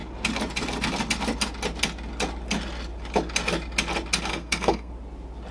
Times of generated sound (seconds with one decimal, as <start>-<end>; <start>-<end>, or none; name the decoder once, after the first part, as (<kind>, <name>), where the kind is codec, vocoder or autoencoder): 4.3-4.9 (codec, SNAC)